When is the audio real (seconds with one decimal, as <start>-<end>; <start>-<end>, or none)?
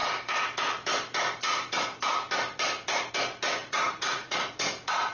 0.0-3.6; 4.5-5.1